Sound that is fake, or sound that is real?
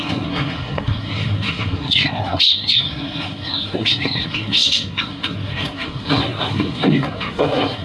fake